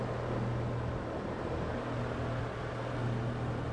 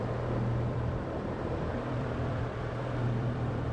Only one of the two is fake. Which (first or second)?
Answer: second